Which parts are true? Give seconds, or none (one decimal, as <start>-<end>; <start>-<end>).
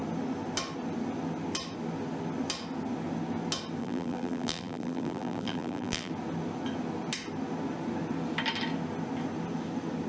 0.0-3.8; 6.1-10.1